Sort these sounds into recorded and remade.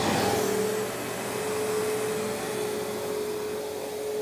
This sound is recorded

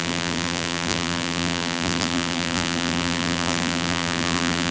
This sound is remade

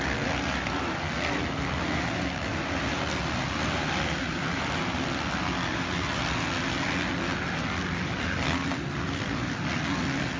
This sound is recorded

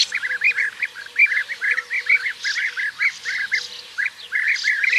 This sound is recorded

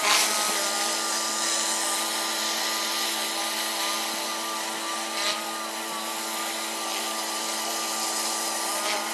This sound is recorded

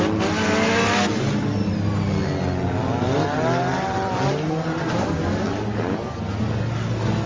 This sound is recorded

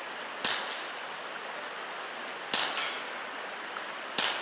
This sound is recorded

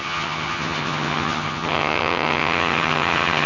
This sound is remade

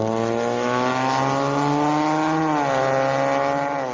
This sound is recorded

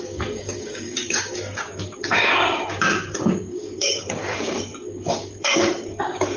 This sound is remade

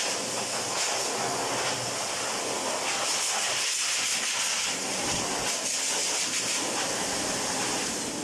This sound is recorded